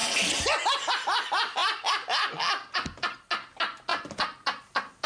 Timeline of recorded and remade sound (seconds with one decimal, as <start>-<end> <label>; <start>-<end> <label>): 0.0-5.1 recorded